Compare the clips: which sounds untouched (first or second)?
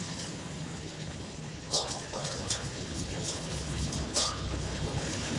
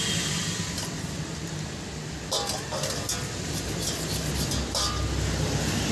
second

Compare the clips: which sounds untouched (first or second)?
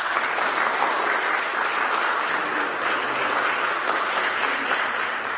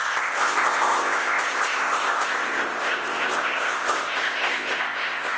first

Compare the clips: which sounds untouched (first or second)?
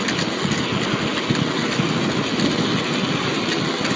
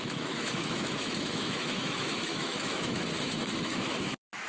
first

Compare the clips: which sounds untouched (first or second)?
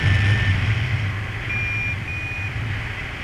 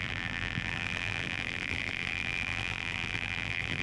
first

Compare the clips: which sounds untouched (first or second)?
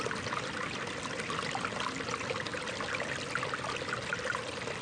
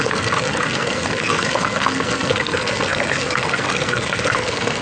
first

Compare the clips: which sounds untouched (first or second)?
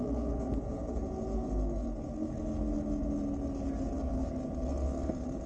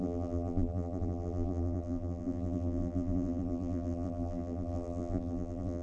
first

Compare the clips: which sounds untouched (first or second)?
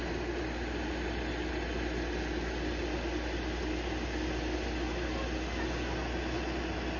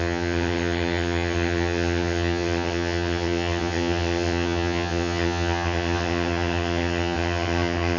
first